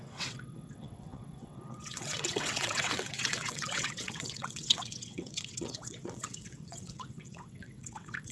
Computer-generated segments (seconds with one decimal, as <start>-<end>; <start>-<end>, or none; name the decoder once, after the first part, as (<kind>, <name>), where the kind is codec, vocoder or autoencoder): 0.0-8.3 (vocoder, WaveNeXt)

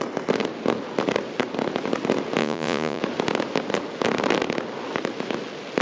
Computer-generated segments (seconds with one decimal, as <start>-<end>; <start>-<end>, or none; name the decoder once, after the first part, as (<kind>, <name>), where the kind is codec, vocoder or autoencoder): 2.4-3.0 (vocoder, Vocos)